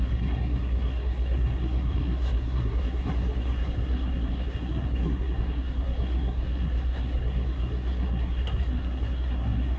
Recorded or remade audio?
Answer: remade